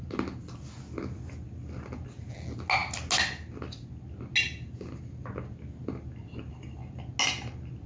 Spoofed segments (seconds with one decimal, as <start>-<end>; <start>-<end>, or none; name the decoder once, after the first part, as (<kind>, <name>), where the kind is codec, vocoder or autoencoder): none